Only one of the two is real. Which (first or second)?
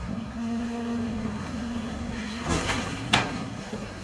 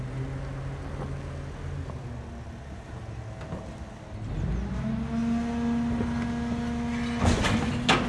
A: second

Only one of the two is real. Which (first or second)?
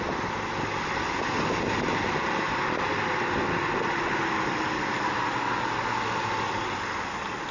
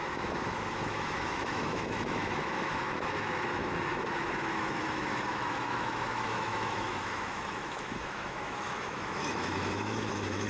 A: first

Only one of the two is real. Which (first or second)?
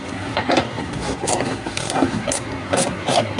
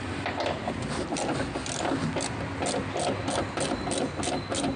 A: second